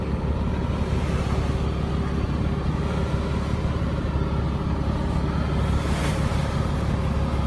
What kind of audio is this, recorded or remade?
recorded